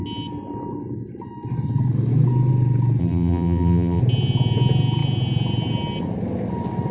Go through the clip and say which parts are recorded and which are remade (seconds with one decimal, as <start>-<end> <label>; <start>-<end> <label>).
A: 0.0-3.0 recorded; 3.0-4.0 remade; 4.0-6.9 recorded